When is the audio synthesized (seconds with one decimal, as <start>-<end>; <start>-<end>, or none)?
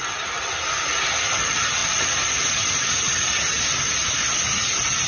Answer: none